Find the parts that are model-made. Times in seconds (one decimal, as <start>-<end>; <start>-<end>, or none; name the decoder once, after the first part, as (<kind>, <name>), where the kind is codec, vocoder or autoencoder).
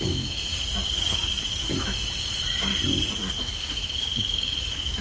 0.0-0.5 (autoencoder, DAC-VAE); 1.1-2.7; 3.4-5.0